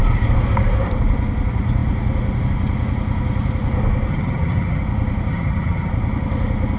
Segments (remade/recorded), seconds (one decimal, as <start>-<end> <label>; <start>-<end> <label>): 0.0-4.1 recorded; 4.1-4.8 remade; 4.8-5.3 recorded; 5.3-5.9 remade; 5.9-6.8 recorded